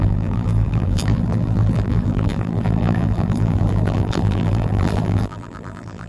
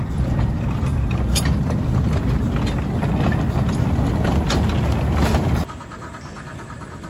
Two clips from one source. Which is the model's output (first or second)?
first